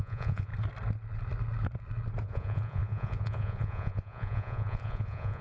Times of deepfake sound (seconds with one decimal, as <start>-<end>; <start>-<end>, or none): 0.0-0.5; 2.2-5.4